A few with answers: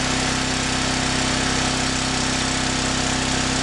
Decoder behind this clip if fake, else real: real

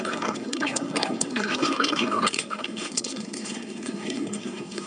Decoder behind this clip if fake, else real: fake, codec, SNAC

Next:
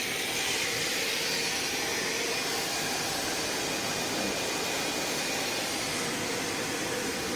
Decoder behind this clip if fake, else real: real